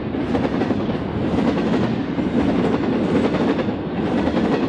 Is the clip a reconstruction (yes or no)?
no